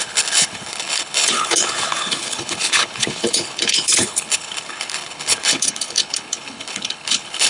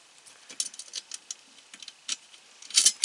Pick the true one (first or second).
second